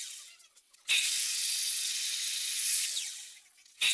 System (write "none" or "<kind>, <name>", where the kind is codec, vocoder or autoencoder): vocoder, WaveNeXt